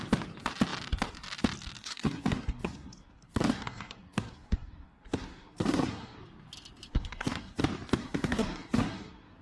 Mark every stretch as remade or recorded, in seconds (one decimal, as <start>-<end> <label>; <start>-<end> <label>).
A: 0.0-1.8 recorded; 1.8-6.2 remade; 6.2-6.9 recorded; 6.9-7.6 remade; 7.6-8.0 recorded; 8.0-9.4 remade